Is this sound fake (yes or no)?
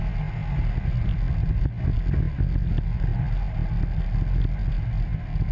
no